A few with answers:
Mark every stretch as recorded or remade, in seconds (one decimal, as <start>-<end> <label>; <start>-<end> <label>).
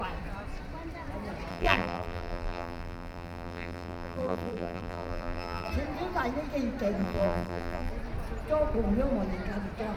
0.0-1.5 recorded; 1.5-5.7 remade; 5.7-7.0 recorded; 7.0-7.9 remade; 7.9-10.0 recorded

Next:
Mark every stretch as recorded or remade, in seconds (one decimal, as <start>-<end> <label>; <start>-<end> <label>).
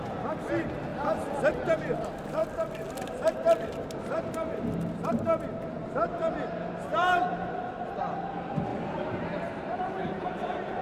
0.0-6.9 recorded; 6.9-7.9 remade; 7.9-8.7 recorded; 8.7-10.3 remade; 10.3-10.8 recorded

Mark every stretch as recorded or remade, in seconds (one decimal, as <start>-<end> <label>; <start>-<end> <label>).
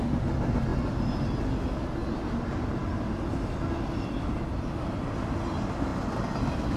0.0-6.8 recorded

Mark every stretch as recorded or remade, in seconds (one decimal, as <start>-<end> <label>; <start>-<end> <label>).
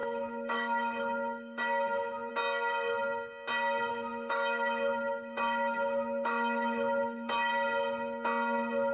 0.0-2.3 remade; 2.3-3.9 recorded; 3.9-7.5 remade; 7.5-8.9 recorded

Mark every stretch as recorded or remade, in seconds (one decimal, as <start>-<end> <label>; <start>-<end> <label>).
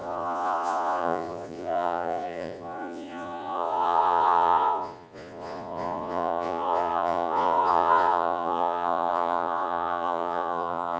0.0-11.0 remade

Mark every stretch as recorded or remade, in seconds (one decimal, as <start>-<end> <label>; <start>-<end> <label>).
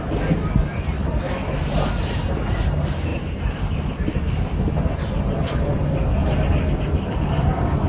0.0-7.9 recorded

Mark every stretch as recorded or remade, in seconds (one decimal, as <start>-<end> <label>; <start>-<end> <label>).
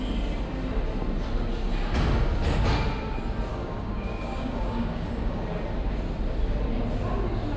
0.0-3.5 recorded; 3.5-5.4 remade; 5.4-7.6 recorded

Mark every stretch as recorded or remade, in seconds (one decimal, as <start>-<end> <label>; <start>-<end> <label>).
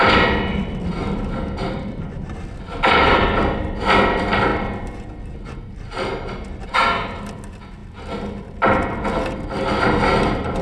0.0-10.6 recorded